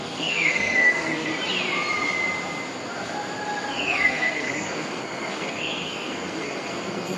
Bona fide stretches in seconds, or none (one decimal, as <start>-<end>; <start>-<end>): 1.3-3.7